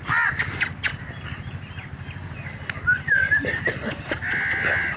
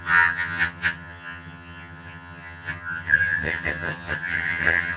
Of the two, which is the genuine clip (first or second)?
first